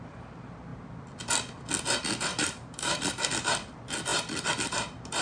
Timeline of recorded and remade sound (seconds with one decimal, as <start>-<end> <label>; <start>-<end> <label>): 0.0-2.3 recorded; 2.3-3.3 remade; 3.3-5.2 recorded